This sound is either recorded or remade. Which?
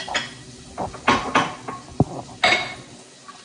recorded